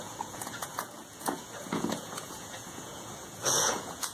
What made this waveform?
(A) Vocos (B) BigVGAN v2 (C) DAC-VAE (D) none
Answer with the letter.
A